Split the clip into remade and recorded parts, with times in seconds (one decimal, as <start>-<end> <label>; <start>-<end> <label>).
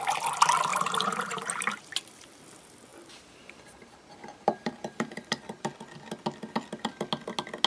0.0-0.7 recorded; 0.7-1.8 remade; 1.8-2.9 recorded; 2.9-5.7 remade; 5.7-7.7 recorded